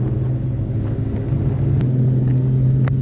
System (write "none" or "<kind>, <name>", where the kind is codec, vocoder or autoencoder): none